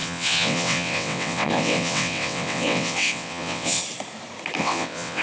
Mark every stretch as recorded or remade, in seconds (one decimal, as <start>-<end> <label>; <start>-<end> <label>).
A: 0.0-3.8 remade; 3.8-4.6 recorded; 4.6-5.2 remade